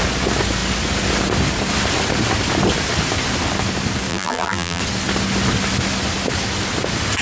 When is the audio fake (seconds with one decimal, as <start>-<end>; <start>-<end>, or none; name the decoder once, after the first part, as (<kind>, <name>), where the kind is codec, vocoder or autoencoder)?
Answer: 4.1-4.8 (vocoder, BigVGAN v2)